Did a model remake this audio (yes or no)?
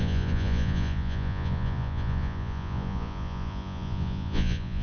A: yes